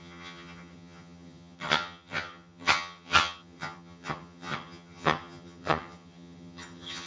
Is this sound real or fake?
fake